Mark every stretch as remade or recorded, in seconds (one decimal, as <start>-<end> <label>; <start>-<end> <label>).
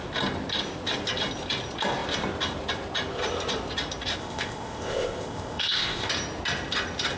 0.0-4.2 recorded; 4.2-6.1 remade; 6.1-7.2 recorded